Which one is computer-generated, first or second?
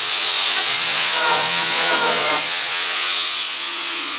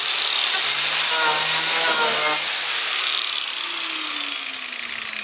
first